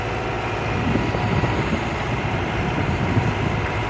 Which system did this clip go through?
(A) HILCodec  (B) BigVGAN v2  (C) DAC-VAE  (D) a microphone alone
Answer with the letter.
B